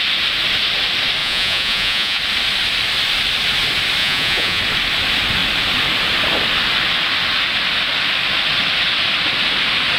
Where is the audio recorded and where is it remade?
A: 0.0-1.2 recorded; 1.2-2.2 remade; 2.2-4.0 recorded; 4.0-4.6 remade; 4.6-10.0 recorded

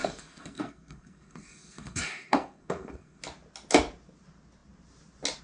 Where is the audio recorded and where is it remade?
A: 0.0-3.2 remade; 3.2-5.4 recorded

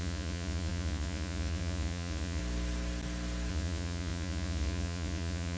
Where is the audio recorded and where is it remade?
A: 0.0-2.4 remade; 2.4-3.5 recorded; 3.5-5.6 remade

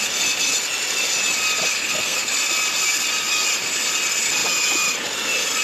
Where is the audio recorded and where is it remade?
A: 0.0-1.7 recorded; 1.7-2.3 remade; 2.3-5.6 recorded

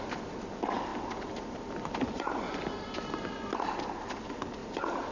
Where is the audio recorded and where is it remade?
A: 0.0-5.1 recorded

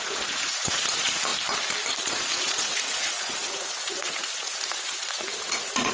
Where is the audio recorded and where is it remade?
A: 0.0-1.3 remade; 1.3-2.1 recorded; 2.1-5.9 remade